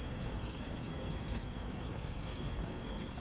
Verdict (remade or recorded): remade